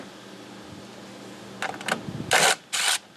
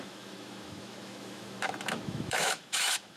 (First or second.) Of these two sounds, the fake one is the second